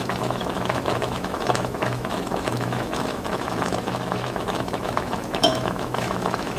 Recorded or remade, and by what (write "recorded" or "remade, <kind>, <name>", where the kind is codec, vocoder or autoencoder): remade, autoencoder, DAC-VAE